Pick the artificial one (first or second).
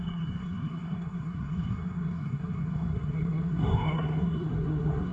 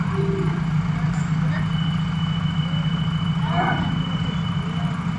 first